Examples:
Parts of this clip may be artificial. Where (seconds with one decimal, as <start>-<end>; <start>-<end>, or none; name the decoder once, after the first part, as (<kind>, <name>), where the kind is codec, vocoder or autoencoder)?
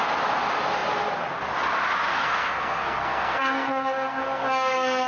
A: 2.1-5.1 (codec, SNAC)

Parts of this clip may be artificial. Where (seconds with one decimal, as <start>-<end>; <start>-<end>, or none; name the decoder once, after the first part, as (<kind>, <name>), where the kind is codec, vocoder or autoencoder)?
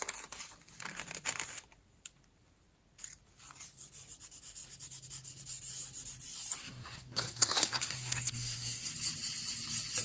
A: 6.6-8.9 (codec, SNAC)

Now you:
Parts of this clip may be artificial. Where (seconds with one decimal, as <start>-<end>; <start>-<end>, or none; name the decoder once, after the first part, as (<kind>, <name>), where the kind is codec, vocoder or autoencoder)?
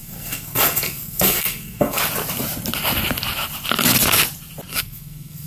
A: 0.0-2.0 (codec, SNAC); 4.7-5.5